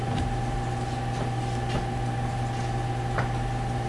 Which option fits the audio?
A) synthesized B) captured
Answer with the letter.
B